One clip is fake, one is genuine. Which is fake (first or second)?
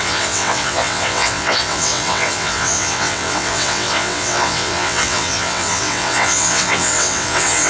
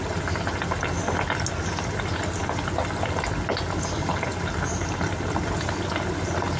first